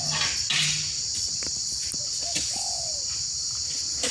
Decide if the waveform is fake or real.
real